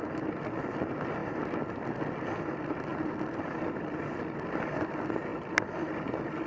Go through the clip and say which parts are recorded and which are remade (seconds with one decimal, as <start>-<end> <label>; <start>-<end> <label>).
0.0-6.5 recorded